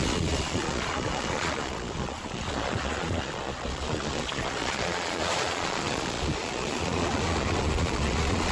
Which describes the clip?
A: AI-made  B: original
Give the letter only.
A